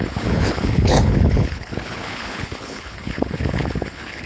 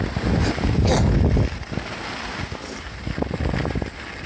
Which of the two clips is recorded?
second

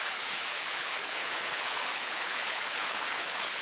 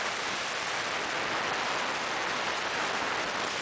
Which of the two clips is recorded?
second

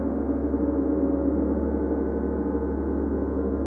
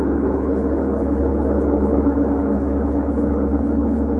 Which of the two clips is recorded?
first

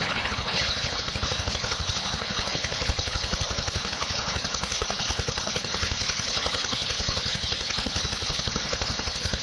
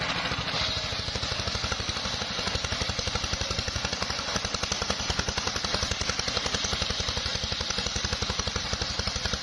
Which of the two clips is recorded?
second